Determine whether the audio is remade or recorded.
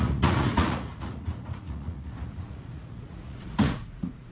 remade